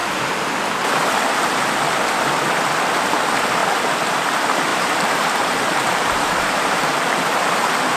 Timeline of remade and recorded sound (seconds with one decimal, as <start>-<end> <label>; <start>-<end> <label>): 0.0-4.7 recorded; 4.7-8.0 remade